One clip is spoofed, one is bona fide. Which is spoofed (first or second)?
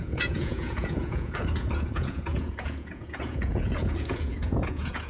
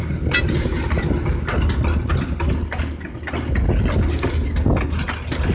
first